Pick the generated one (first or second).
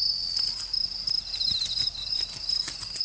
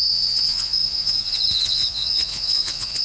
second